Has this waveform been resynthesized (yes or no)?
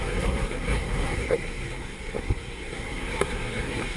yes